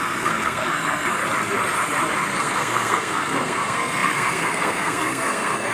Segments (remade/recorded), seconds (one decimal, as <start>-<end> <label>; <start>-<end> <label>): 0.0-1.2 remade; 1.2-2.4 recorded; 2.4-5.7 remade